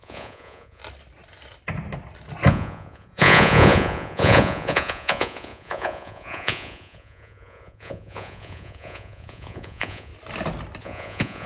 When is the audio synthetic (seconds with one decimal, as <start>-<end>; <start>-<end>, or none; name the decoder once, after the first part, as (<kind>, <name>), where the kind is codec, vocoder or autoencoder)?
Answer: 0.0-0.8 (vocoder, Vocos); 2.5-10.1; 10.8-11.5